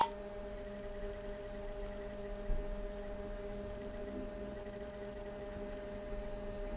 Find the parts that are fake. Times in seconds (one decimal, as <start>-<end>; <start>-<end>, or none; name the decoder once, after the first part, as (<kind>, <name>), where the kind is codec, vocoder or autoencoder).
none